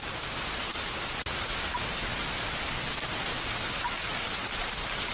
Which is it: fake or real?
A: real